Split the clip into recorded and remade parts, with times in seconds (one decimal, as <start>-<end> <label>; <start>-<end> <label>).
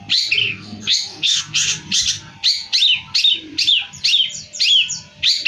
0.0-0.4 recorded; 0.4-1.4 remade; 1.4-5.5 recorded